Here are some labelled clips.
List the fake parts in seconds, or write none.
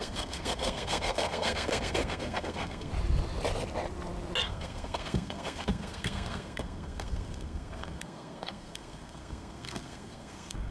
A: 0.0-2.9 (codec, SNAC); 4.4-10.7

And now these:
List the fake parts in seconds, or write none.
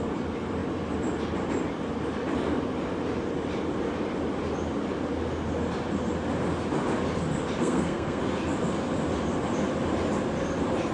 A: 7.6-8.2 (codec, SNAC)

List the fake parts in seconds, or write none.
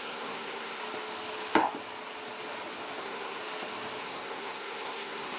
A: 0.0-0.8 (codec, SNAC); 3.0-3.4; 4.0-5.4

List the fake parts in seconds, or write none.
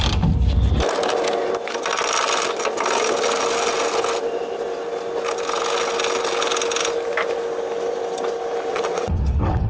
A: 8.7-9.7 (vocoder, WaveNeXt)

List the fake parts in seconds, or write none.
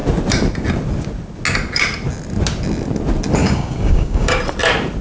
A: 3.4-4.4 (codec, DAC)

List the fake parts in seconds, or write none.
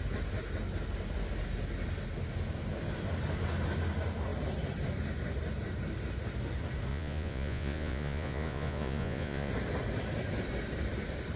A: 6.9-9.5 (vocoder, Vocos)